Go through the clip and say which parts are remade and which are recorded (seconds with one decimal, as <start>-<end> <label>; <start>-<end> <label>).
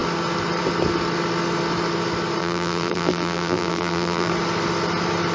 0.0-2.4 recorded; 2.4-4.3 remade; 4.3-5.3 recorded